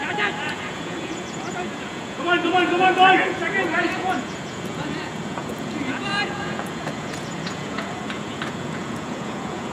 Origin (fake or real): fake